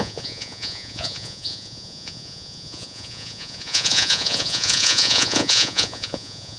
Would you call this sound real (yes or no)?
no